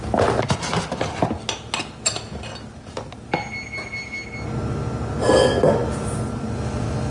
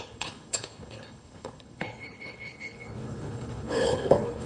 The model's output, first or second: second